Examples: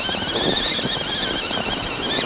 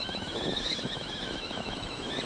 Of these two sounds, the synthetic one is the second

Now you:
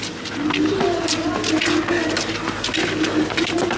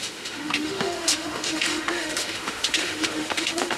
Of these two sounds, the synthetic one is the second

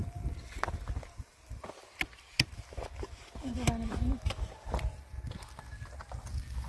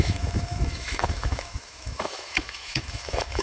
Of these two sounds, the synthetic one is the second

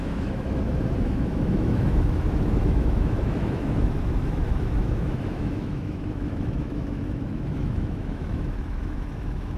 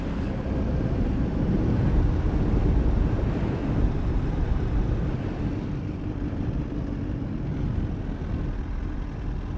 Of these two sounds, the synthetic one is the first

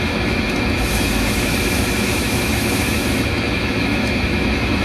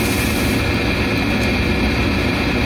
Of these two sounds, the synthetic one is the first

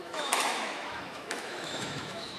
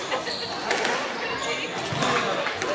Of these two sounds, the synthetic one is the first